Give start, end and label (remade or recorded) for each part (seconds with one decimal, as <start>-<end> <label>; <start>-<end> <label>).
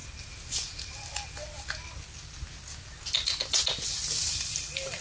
0.0-5.0 recorded